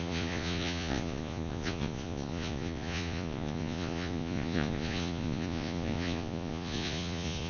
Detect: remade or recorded remade